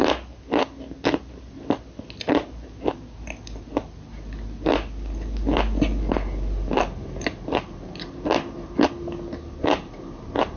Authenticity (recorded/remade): recorded